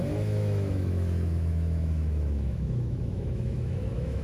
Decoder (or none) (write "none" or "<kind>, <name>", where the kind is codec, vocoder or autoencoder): autoencoder, DAC-VAE